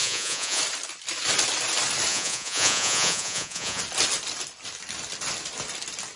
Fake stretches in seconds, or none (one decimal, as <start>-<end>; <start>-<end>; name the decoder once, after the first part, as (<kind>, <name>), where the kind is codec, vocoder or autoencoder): 0.0-0.6 (vocoder, Vocos); 2.1-3.8